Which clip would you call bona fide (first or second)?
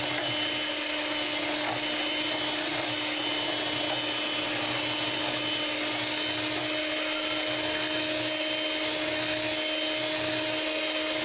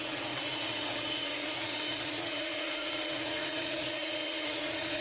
first